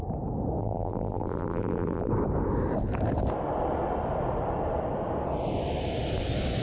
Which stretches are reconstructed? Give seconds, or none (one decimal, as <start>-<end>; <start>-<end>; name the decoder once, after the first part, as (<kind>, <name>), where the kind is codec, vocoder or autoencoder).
0.6-2.1 (vocoder, BigVGAN v2)